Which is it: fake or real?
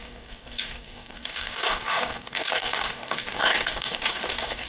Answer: fake